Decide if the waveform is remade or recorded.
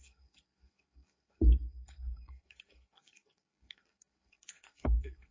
remade